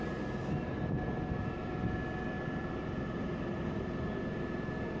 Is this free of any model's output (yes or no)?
yes